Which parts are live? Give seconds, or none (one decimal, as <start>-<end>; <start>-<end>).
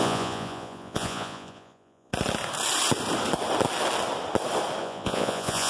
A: 2.1-4.8